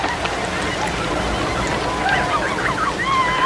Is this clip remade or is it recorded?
recorded